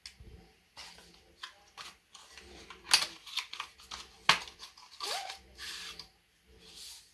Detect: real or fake real